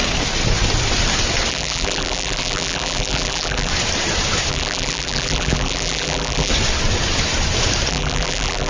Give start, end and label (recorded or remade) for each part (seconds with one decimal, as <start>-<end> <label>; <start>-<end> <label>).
0.0-1.5 recorded; 1.5-3.7 remade; 3.7-4.5 recorded; 4.5-6.5 remade; 6.5-7.9 recorded; 7.9-8.7 remade